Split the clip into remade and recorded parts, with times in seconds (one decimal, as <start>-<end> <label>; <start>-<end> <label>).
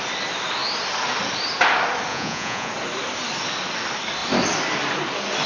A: 0.0-2.1 recorded; 2.1-2.7 remade; 2.7-5.5 recorded